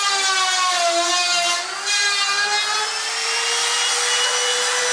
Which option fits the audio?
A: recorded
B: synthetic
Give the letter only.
A